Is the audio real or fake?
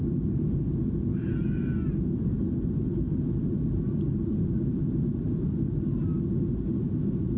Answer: real